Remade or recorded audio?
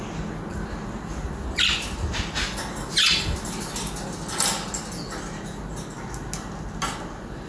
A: recorded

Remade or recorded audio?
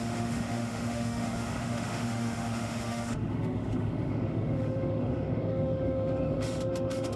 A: remade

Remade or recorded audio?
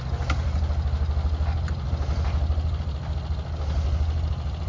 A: recorded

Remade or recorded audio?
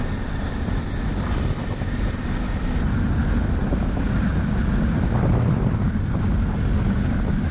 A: recorded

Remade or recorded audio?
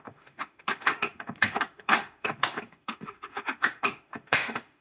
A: remade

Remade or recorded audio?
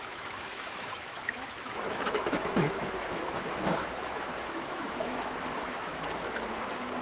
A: remade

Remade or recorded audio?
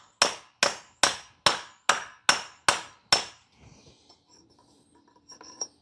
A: recorded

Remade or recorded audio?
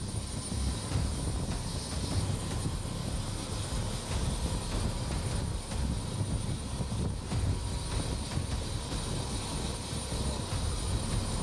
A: recorded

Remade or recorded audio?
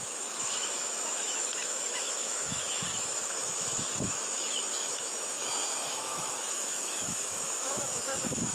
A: remade